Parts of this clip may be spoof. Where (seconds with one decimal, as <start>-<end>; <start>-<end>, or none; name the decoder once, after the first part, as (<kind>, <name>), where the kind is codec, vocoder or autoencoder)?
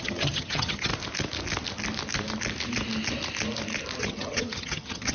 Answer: 0.0-0.9 (vocoder, HiFi-GAN); 4.0-5.1